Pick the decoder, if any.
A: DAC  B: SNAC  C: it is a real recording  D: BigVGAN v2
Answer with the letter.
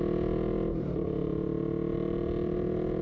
C